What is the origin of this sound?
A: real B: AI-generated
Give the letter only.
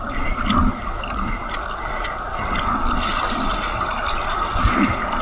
B